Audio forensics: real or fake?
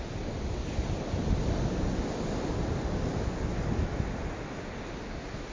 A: real